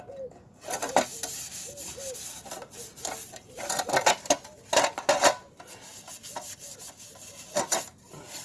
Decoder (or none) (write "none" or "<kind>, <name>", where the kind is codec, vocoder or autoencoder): none